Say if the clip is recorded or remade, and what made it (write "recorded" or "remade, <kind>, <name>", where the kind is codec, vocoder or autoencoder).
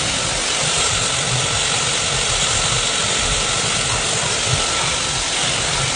recorded